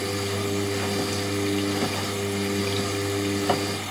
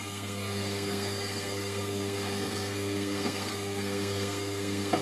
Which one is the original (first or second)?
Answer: first